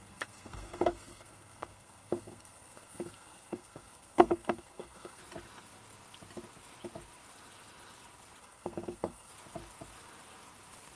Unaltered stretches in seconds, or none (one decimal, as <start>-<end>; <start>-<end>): 5.2-8.4; 9.3-11.0